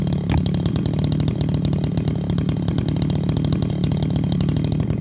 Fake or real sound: real